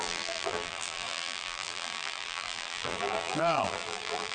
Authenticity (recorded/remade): remade